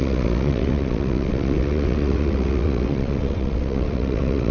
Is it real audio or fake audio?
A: fake